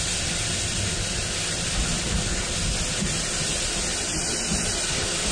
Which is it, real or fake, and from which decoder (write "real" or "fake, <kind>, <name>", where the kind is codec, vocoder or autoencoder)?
real